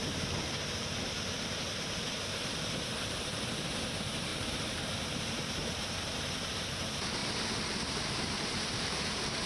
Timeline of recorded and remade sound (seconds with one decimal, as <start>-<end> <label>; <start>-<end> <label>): 0.0-7.2 remade; 7.2-7.9 recorded; 7.9-9.5 remade